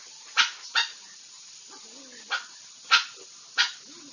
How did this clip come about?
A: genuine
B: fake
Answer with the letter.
A